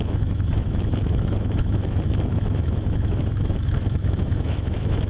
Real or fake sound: fake